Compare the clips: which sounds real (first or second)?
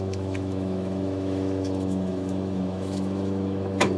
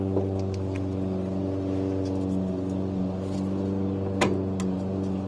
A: second